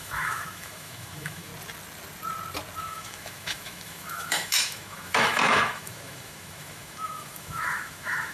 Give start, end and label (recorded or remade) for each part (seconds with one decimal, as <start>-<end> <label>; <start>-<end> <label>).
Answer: 0.0-1.5 remade; 1.5-2.8 recorded; 2.8-8.3 remade